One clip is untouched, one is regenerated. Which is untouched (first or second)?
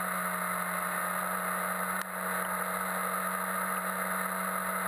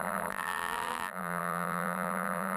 first